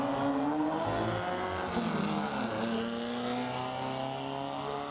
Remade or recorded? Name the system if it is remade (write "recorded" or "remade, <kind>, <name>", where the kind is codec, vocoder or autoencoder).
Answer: recorded